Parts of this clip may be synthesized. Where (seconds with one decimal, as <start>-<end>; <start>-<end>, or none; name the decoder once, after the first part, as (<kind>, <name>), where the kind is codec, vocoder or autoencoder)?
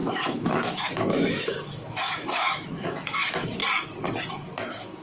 0.0-3.6 (autoencoder, DAC-VAE); 4.3-5.0